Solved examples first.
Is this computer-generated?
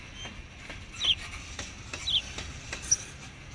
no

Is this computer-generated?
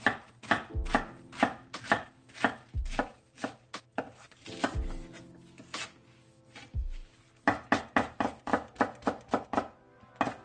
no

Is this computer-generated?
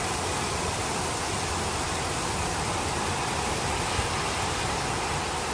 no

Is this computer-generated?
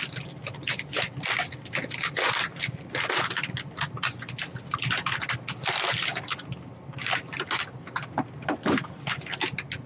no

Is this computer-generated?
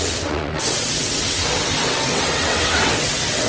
yes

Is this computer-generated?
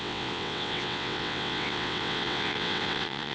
yes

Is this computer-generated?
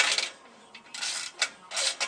no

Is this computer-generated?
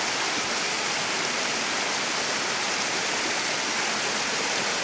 no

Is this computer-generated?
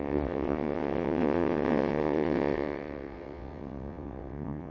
yes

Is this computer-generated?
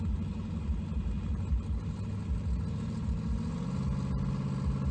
no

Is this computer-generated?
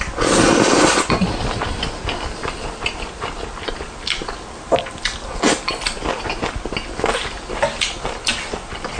no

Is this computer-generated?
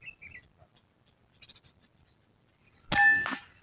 no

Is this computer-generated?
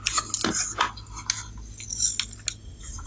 no